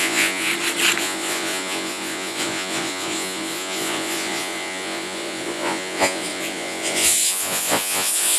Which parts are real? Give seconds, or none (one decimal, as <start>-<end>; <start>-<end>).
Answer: 0.5-1.0